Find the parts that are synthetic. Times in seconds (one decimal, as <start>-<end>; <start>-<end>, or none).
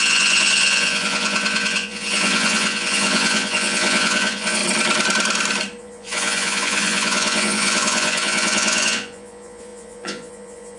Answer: 0.0-4.6; 5.8-10.8